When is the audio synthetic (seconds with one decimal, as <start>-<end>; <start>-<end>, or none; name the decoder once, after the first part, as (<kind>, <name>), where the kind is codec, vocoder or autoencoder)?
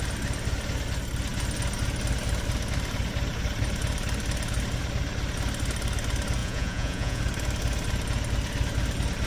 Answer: 6.4-7.2 (vocoder, Vocos)